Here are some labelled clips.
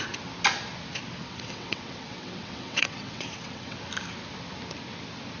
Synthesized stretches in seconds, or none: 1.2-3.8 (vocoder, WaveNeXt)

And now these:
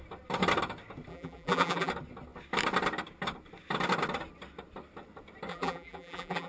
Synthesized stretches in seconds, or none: 1.1-1.9 (vocoder, BigVGAN v2); 5.5-6.5

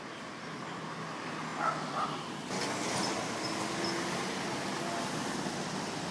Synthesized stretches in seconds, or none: none

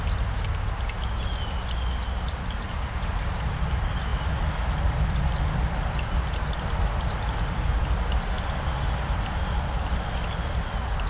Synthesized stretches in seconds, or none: none

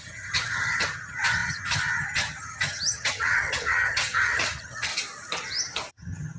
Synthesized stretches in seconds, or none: 0.0-4.9 (vocoder, HiFi-GAN); 5.9-6.4

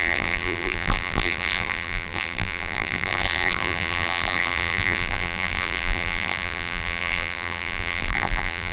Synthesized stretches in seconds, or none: 0.0-8.7 (vocoder, BigVGAN v2)